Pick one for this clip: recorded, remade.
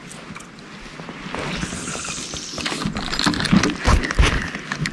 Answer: recorded